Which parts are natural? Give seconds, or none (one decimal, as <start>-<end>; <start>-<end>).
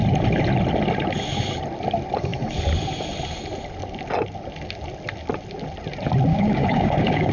0.0-6.3